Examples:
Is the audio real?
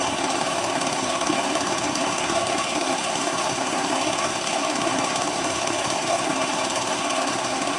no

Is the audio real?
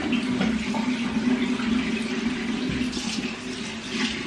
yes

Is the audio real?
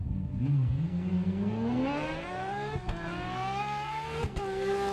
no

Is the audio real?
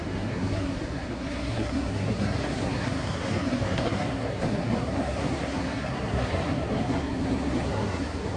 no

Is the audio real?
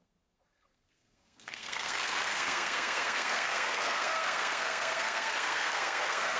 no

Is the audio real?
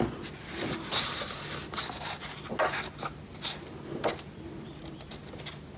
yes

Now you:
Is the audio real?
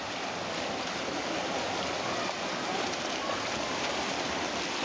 yes